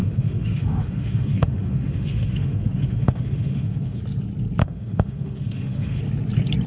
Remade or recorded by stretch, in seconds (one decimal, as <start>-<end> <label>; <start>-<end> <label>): 0.0-4.0 remade; 4.0-4.6 recorded; 4.6-6.0 remade; 6.0-6.7 recorded